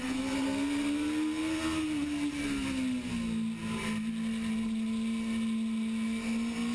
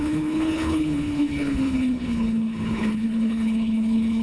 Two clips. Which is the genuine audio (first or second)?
first